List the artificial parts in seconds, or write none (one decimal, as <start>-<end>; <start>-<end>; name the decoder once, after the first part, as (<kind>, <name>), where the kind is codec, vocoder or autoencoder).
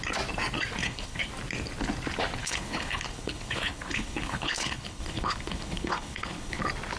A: 0.8-1.3 (codec, HILCodec); 2.4-6.6